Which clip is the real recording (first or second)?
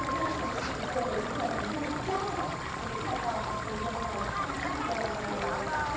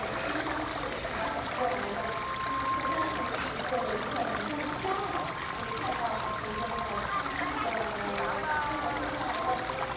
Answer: second